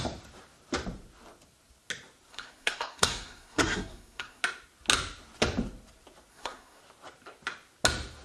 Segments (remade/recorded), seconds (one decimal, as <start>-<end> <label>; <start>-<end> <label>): 0.0-2.3 recorded; 2.3-4.4 remade; 4.4-6.3 recorded; 6.3-6.8 remade; 6.8-8.2 recorded